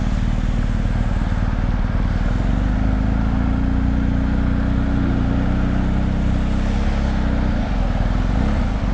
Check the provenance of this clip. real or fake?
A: real